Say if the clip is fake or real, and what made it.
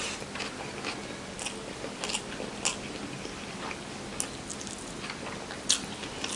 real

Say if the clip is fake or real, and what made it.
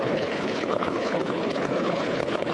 fake, codec, HILCodec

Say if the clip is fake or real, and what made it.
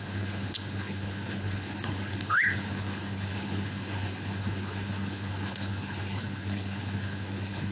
fake, codec, HILCodec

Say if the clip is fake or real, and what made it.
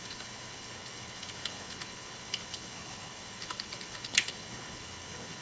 fake, codec, HILCodec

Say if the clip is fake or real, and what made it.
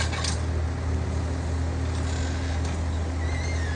real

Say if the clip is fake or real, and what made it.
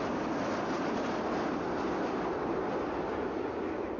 real